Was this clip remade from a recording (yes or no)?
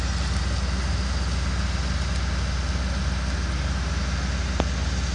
no